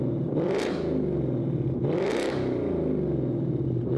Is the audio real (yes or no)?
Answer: yes